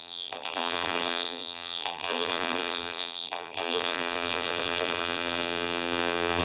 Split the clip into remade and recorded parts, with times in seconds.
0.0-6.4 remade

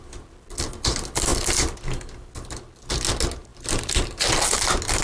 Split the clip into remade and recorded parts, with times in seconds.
0.0-3.5 recorded; 3.5-4.6 remade; 4.6-5.0 recorded